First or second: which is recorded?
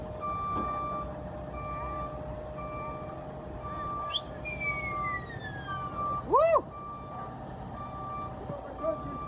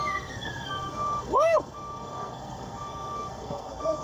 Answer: first